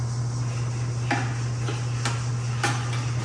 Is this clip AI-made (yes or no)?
no